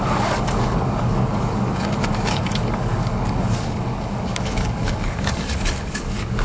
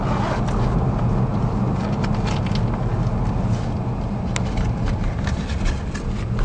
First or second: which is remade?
first